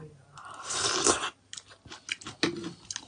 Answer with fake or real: real